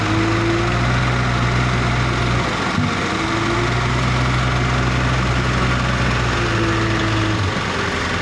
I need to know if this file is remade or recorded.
recorded